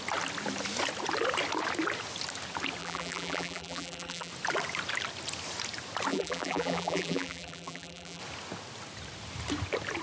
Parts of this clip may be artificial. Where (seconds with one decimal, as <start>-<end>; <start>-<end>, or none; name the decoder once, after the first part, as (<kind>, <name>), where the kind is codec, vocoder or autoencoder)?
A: 2.8-4.3 (vocoder, BigVGAN v2); 6.1-8.2